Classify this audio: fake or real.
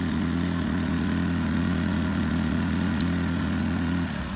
fake